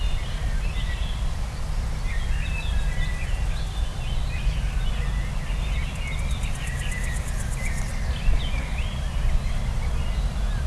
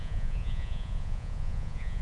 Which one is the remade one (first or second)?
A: second